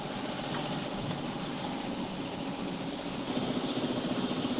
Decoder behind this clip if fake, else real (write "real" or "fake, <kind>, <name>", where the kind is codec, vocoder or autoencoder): real